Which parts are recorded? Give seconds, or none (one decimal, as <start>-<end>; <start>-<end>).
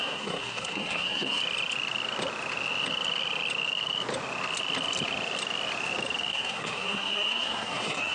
1.4-6.3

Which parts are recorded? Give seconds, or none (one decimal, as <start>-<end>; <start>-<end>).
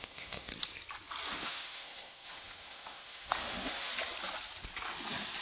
0.5-1.3; 3.9-5.4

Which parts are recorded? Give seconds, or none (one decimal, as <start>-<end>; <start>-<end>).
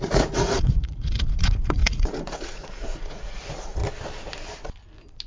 3.8-5.3